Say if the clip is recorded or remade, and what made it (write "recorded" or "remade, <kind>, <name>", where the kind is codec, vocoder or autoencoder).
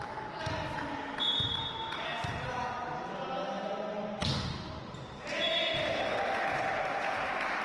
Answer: recorded